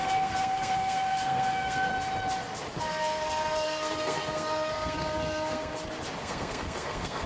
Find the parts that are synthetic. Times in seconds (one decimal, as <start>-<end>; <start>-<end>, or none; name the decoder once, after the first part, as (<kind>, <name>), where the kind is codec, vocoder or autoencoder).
0.0-1.9 (codec, SNAC); 2.8-5.7; 6.2-7.3